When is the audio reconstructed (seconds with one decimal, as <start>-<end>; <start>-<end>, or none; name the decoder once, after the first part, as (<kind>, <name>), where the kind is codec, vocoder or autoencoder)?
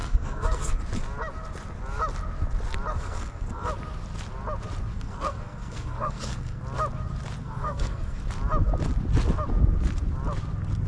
0.0-0.8 (codec, SNAC); 2.9-3.7; 4.9-6.6; 7.4-8.2